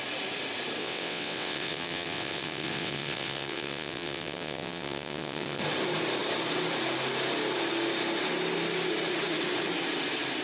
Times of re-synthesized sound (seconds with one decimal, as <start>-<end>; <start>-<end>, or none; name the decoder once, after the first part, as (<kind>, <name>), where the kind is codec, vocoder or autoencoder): 0.8-5.6 (vocoder, WaveNeXt)